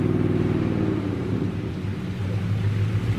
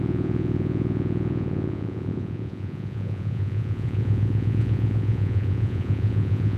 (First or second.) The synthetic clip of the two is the second